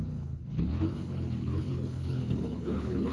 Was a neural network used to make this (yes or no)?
yes